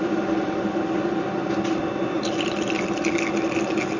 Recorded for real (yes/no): yes